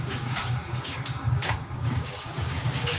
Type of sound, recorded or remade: remade